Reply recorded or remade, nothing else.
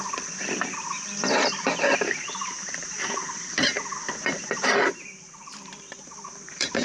remade